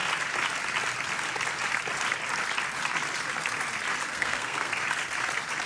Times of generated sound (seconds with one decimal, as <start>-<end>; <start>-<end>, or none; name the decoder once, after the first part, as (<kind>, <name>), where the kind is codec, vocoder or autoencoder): 4.1-4.7 (codec, SNAC)